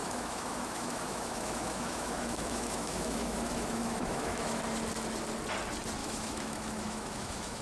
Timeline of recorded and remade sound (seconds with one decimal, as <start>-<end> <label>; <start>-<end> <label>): 0.0-4.6 remade; 4.6-6.0 recorded; 6.0-7.6 remade